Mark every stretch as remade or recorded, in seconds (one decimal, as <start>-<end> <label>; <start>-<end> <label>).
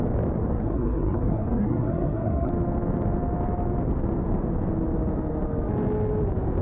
0.0-0.5 recorded; 0.5-2.5 remade; 2.5-6.6 recorded